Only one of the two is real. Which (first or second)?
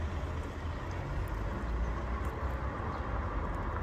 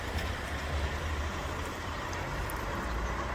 first